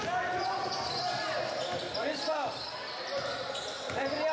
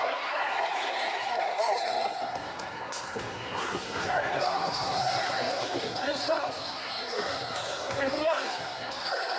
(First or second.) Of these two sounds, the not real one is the second